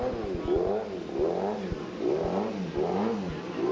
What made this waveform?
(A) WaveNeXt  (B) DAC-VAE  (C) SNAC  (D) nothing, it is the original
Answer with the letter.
D